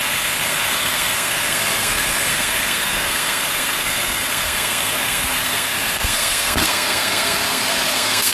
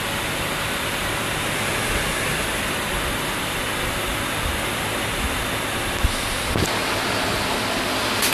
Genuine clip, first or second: second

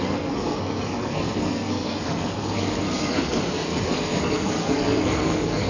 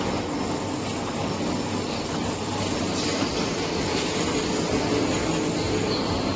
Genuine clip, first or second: second